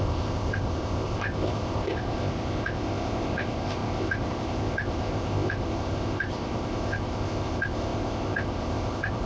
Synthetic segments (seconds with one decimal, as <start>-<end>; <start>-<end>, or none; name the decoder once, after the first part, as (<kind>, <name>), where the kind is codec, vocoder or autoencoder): 0.0-9.3 (codec, ZipCodec)